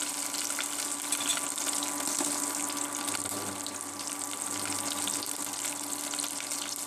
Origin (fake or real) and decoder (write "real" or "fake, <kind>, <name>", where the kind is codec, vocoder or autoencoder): real